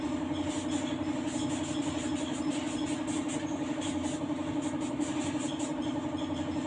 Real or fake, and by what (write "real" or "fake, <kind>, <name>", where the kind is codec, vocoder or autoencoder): real